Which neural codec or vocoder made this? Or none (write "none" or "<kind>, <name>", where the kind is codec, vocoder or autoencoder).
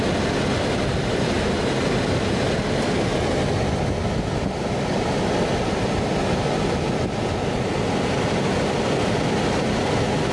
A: none